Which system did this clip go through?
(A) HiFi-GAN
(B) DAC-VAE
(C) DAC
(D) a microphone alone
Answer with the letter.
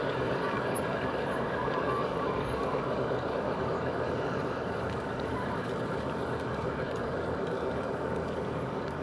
C